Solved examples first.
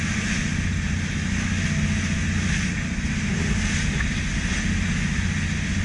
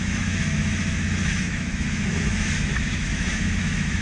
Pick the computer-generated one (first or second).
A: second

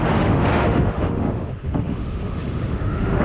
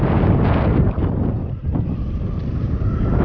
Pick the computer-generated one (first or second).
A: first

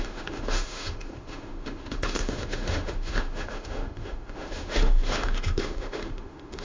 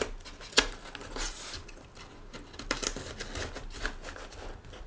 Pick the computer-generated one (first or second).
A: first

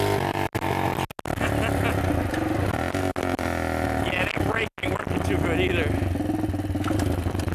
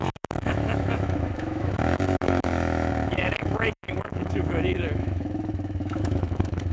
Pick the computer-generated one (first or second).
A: second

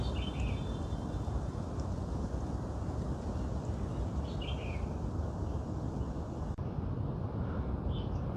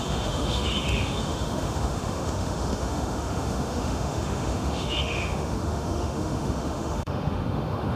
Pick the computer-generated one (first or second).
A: second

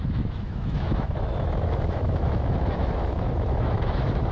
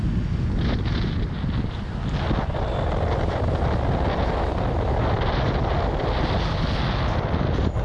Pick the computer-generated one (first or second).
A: first